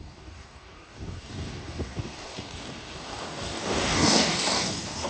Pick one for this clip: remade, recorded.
remade